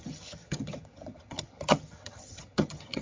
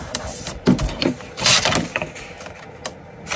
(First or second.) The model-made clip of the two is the first